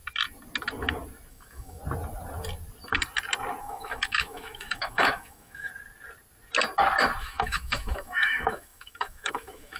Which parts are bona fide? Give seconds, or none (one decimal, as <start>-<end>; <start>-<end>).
0.0-1.3; 1.8-3.6; 5.7-7.2